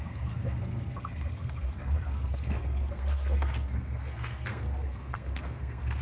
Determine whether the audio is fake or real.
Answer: fake